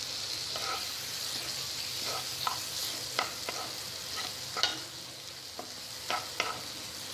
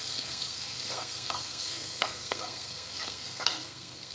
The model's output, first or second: second